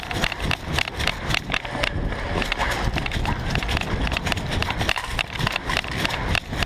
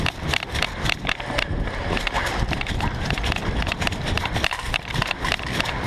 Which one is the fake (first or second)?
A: second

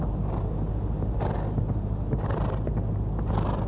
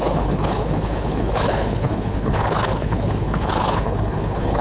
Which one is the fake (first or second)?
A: second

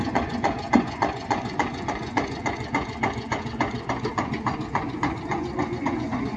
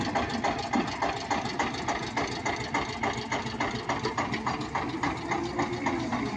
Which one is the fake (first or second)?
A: first